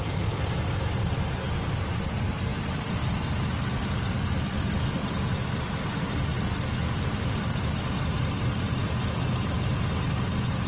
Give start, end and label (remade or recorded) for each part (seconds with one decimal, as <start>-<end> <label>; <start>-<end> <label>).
0.0-10.7 recorded